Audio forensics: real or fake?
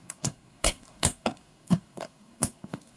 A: fake